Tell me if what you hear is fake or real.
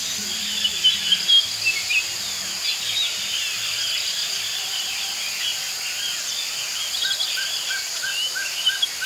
real